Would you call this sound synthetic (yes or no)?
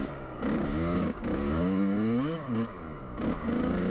yes